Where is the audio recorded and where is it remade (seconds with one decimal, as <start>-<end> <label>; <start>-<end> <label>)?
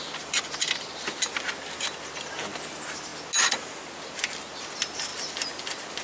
0.0-6.0 recorded